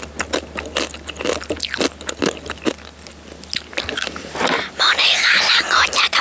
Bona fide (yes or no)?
yes